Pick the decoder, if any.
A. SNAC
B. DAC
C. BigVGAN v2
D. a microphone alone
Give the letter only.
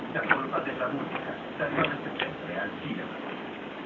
B